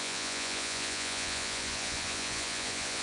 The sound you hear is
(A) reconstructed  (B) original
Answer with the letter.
A